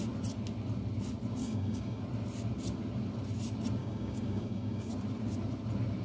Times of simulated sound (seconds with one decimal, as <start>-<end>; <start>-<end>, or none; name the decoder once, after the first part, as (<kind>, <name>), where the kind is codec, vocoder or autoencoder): 1.4-2.0 (codec, DAC); 3.8-4.9